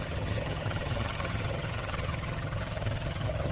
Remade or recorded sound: remade